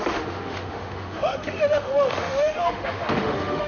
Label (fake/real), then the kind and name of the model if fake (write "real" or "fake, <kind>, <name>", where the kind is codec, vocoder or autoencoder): fake, autoencoder, DAC-VAE